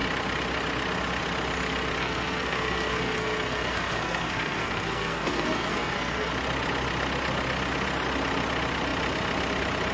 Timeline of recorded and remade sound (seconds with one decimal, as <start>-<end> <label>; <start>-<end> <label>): 0.0-2.0 recorded; 2.0-6.3 remade; 6.3-9.9 recorded